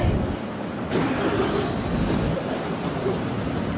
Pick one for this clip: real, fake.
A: real